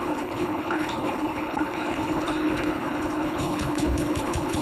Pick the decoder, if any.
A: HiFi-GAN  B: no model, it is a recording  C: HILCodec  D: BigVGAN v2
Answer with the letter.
C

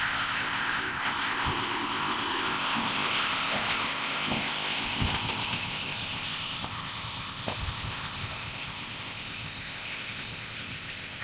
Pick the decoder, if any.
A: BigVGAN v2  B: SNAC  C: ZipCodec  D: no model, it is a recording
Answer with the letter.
C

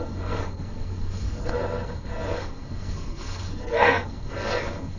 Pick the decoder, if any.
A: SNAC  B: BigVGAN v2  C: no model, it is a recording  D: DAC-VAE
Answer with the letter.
A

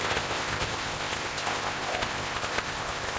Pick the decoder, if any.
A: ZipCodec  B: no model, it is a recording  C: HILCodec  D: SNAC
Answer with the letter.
A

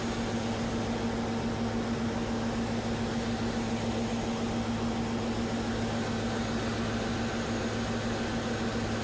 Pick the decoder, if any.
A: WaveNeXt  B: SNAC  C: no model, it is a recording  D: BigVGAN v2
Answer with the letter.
C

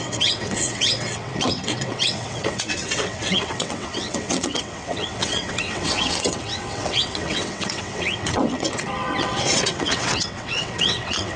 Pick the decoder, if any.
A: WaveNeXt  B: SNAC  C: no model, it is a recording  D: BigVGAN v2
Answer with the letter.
A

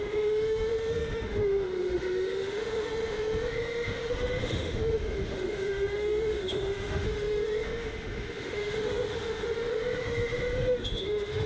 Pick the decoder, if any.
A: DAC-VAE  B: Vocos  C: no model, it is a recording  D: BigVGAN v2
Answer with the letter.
A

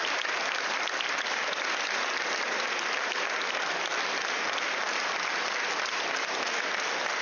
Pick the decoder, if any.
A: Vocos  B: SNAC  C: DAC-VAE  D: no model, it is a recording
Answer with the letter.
D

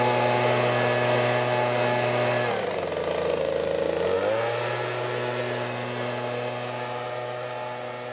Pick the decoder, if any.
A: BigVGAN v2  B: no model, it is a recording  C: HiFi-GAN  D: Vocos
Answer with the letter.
B